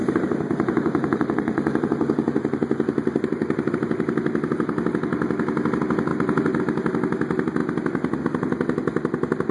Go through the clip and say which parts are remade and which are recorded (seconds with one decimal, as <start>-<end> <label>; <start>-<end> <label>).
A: 0.0-3.7 remade; 3.7-6.1 recorded; 6.1-6.6 remade; 6.6-9.5 recorded